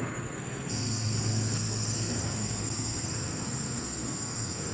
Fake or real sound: fake